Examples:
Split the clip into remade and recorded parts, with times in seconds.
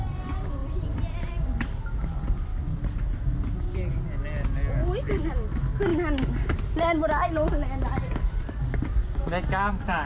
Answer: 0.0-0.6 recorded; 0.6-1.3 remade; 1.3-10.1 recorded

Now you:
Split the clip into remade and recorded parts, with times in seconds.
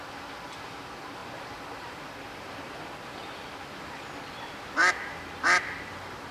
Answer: 0.0-6.3 recorded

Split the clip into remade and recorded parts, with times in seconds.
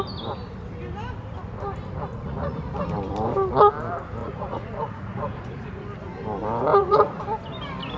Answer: 0.0-2.1 recorded; 2.1-2.6 remade; 2.6-4.2 recorded; 4.2-5.7 remade; 5.7-6.7 recorded; 6.7-7.2 remade; 7.2-8.0 recorded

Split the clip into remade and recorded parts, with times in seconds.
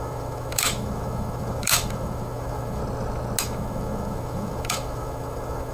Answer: 0.0-2.8 remade; 2.8-3.4 recorded; 3.4-5.7 remade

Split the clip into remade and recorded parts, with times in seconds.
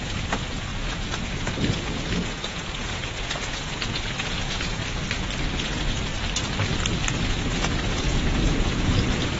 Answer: 0.0-4.8 remade; 4.8-5.6 recorded; 5.6-6.1 remade; 6.1-7.1 recorded; 7.1-9.4 remade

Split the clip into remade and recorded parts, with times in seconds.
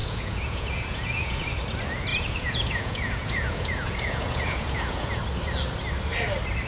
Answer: 0.0-1.5 remade; 1.5-2.1 recorded; 2.1-5.2 remade; 5.2-6.7 recorded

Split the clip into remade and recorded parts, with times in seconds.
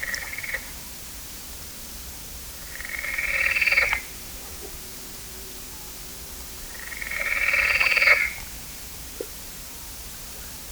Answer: 0.0-10.7 remade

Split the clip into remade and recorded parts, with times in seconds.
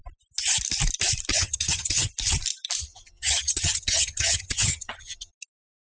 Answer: 0.0-1.3 recorded; 1.3-2.1 remade; 2.1-2.8 recorded; 2.8-5.3 remade; 5.3-6.0 recorded